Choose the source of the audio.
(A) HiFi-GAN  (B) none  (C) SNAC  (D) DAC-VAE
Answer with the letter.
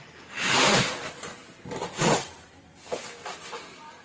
B